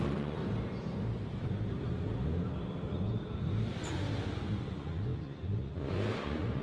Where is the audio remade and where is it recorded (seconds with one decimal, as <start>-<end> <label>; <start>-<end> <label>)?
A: 0.0-0.4 remade; 0.4-4.4 recorded; 4.4-6.6 remade